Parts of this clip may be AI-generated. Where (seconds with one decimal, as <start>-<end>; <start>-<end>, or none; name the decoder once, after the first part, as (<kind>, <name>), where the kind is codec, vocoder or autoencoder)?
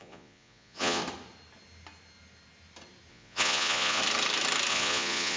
0.0-1.0 (vocoder, Vocos); 3.1-4.0; 4.7-5.4